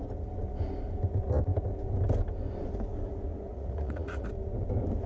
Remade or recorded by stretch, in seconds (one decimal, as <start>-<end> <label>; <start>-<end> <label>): 0.0-3.5 recorded; 3.5-4.3 remade; 4.3-5.1 recorded